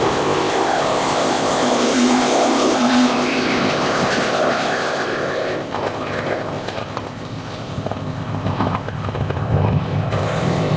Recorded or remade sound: remade